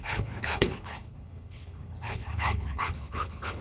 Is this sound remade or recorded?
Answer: remade